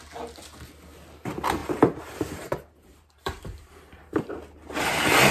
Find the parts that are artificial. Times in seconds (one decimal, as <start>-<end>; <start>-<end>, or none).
1.6-4.2

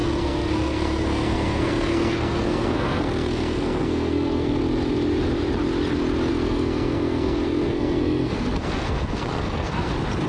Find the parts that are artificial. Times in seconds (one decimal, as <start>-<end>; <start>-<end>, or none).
0.0-4.6; 6.3-9.9

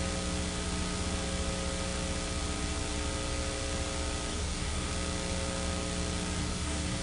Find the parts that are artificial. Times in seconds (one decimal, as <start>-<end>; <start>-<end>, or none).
4.3-4.9; 6.4-7.0

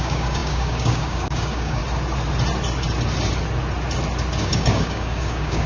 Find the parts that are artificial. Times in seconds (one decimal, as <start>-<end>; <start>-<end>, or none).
0.0-1.8; 4.4-5.7

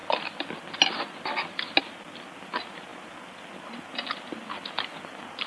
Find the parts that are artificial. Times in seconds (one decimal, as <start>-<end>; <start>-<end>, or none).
none

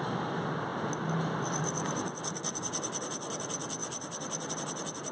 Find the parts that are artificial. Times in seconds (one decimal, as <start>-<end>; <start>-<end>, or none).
none

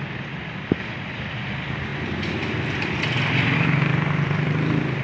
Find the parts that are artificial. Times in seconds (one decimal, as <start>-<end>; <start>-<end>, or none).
1.9-3.0; 3.9-5.0

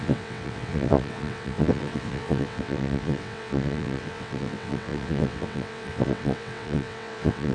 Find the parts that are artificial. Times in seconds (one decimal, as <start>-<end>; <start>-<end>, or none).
0.0-7.5